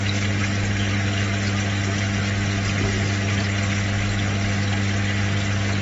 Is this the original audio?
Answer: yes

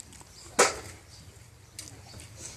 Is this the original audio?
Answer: yes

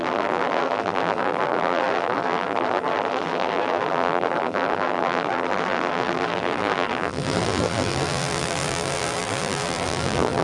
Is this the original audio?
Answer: no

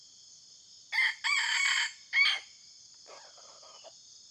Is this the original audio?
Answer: yes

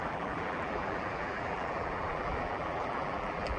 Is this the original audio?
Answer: no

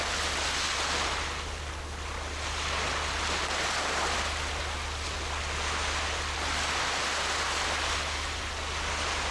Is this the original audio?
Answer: yes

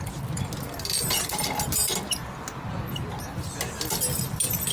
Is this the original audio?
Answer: yes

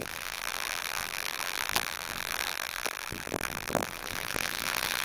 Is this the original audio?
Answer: no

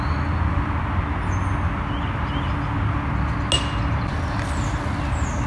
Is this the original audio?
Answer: yes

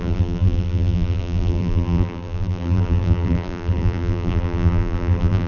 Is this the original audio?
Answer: no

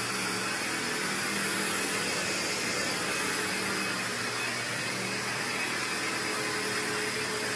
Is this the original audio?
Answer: yes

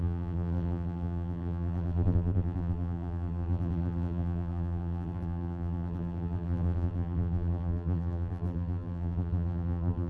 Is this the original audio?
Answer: no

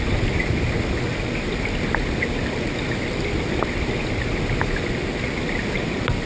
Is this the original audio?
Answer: yes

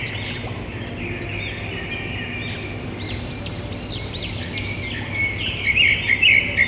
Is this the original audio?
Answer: no